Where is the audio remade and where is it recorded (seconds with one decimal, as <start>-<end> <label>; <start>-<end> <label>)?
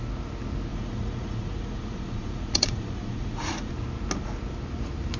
0.0-0.7 recorded; 0.7-3.7 remade; 3.7-5.2 recorded